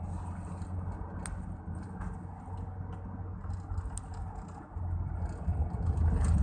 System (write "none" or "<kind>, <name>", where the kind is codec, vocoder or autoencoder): none